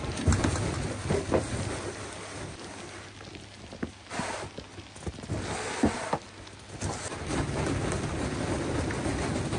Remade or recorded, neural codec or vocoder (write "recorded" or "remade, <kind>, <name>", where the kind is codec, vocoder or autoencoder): recorded